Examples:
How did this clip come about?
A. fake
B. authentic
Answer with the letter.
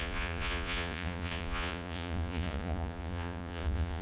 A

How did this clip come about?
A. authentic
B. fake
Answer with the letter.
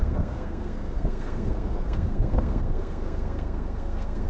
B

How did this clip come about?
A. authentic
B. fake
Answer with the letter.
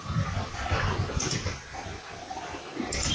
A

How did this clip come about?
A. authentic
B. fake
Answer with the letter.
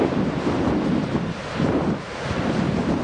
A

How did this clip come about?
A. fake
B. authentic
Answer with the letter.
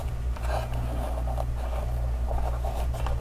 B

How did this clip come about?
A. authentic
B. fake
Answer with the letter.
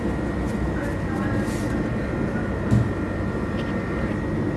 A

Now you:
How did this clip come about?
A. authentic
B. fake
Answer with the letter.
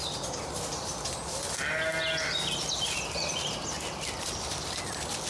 A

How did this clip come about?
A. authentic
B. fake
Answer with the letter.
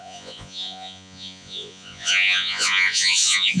B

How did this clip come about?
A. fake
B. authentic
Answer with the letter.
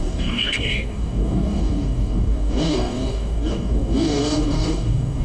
A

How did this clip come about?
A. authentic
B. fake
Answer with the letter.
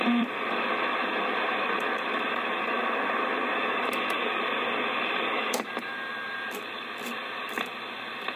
B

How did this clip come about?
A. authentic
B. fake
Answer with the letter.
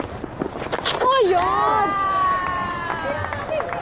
A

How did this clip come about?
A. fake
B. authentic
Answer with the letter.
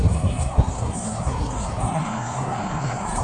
A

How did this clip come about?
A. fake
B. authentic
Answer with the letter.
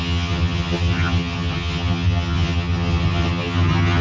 A